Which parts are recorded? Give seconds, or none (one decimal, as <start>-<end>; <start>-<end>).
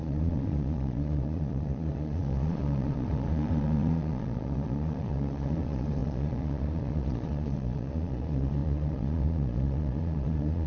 none